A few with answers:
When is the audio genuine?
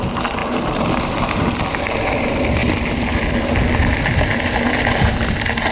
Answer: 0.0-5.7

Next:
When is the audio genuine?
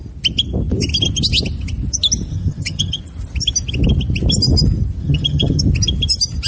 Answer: 0.0-2.3; 3.0-5.0; 5.6-6.5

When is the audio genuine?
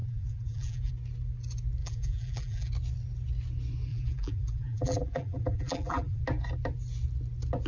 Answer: 0.9-1.8; 2.7-3.9; 6.2-7.7